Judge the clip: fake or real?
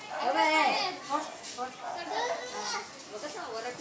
real